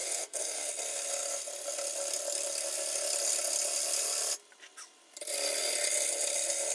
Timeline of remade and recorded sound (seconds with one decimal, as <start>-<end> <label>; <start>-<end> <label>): 0.0-0.7 remade; 0.7-6.7 recorded

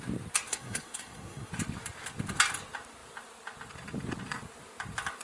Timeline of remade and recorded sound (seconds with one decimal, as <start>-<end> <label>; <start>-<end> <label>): 0.0-0.5 recorded; 0.5-1.5 remade; 1.5-5.2 recorded

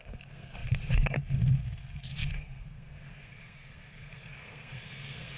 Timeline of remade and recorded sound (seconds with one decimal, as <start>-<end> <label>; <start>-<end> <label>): 0.0-5.4 remade

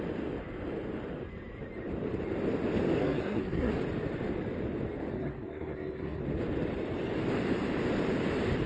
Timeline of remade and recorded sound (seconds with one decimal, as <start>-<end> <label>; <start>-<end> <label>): 0.0-3.0 recorded; 3.0-3.7 remade; 3.7-5.1 recorded; 5.1-6.2 remade; 6.2-8.7 recorded

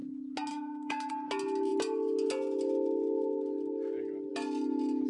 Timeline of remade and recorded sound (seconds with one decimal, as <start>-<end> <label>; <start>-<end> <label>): 0.0-0.5 recorded; 0.5-1.1 remade; 1.1-5.1 recorded

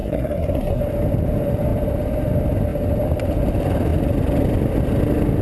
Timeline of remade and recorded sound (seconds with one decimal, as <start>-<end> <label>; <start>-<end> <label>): 0.0-0.8 remade; 0.8-5.4 recorded

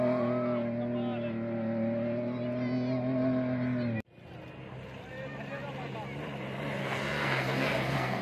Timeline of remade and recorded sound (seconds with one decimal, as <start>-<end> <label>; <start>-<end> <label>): 0.0-6.8 recorded; 6.8-8.2 remade

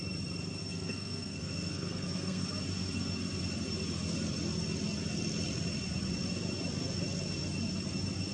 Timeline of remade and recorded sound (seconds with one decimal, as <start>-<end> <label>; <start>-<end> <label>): 0.0-0.6 recorded; 0.6-2.5 remade; 2.5-8.3 recorded